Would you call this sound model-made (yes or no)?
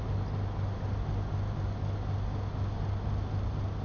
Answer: no